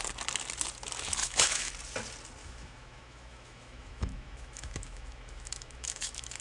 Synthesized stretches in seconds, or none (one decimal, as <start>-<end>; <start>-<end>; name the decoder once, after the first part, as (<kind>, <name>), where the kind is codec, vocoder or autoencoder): 1.2-1.7 (autoencoder, DAC-VAE); 2.4-6.4